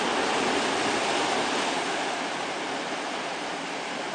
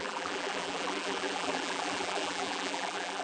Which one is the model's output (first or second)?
second